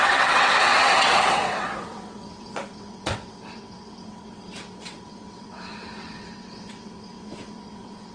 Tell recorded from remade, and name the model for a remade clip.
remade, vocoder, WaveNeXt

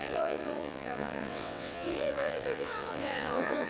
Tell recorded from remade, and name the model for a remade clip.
remade, vocoder, WaveNeXt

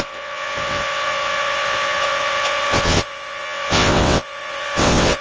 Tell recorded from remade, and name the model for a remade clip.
remade, vocoder, WaveNeXt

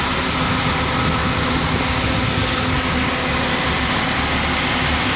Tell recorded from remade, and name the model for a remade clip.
recorded